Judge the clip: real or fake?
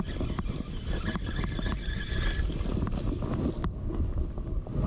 real